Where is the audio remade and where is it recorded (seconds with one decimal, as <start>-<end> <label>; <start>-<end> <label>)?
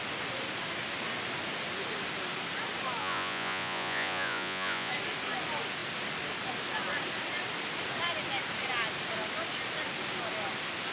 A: 0.0-3.0 recorded; 3.0-4.9 remade; 4.9-10.9 recorded